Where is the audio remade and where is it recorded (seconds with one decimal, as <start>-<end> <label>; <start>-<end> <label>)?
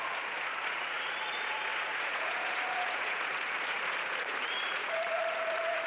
0.0-5.9 remade